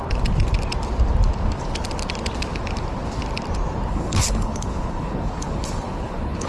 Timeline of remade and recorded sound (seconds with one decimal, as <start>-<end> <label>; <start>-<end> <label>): 0.0-3.9 recorded; 3.9-6.5 remade